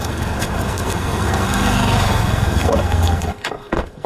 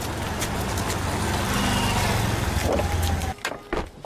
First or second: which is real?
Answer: second